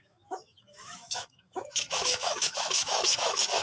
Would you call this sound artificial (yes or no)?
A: yes